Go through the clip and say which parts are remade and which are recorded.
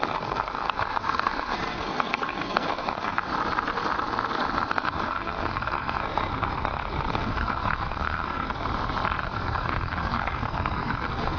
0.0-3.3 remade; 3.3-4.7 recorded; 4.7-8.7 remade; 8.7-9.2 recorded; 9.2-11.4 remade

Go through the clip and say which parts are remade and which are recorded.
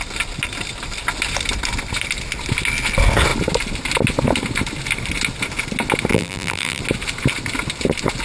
0.0-6.1 recorded; 6.1-6.8 remade; 6.8-8.2 recorded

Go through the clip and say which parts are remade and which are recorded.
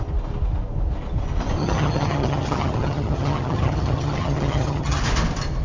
0.0-1.6 recorded; 1.6-5.0 remade; 5.0-5.6 recorded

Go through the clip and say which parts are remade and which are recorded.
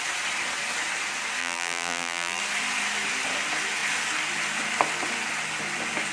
0.0-1.4 recorded; 1.4-2.4 remade; 2.4-6.1 recorded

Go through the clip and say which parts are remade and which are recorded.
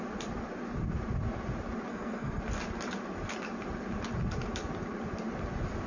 0.0-1.9 recorded; 1.9-2.4 remade; 2.4-5.9 recorded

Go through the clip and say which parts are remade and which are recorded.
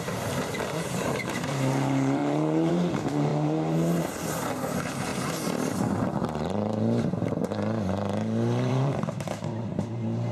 0.0-2.2 remade; 2.2-2.7 recorded; 2.7-5.1 remade; 5.1-8.7 recorded; 8.7-10.3 remade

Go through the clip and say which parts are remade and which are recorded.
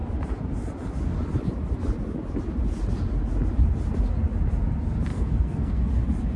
0.0-5.1 recorded; 5.1-5.9 remade; 5.9-6.4 recorded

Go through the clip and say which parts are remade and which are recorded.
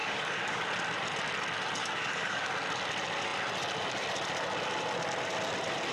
0.0-0.6 remade; 0.6-1.8 recorded; 1.8-2.5 remade; 2.5-5.9 recorded